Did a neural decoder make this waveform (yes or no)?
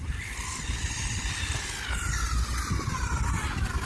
no